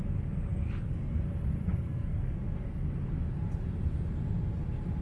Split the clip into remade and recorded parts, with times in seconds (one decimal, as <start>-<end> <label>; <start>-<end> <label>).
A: 0.0-0.5 recorded; 0.5-1.2 remade; 1.2-1.6 recorded; 1.6-2.9 remade; 2.9-5.0 recorded